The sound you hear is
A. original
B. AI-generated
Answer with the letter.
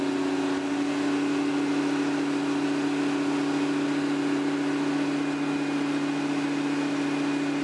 A